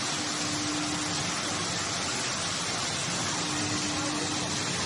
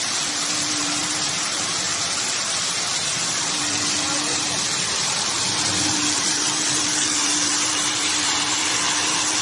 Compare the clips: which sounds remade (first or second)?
second